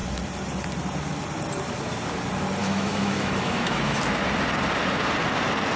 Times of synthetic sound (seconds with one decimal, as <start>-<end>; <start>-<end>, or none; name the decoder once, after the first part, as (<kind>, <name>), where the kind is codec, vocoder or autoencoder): 2.6-4.0 (autoencoder, DAC-VAE)